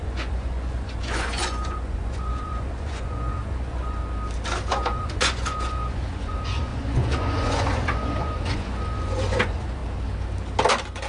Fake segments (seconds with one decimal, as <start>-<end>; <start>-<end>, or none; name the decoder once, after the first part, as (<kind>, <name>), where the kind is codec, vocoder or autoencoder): 0.0-4.0 (vocoder, Vocos); 4.7-9.8